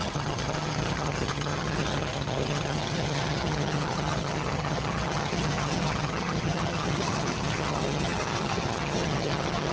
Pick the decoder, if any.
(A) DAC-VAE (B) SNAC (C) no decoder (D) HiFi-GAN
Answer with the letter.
D